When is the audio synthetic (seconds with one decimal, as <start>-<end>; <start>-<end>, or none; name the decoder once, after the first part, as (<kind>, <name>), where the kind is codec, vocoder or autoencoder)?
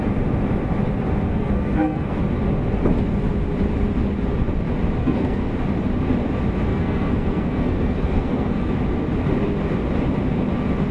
1.3-2.2 (codec, SNAC); 5.0-5.5; 6.7-8.7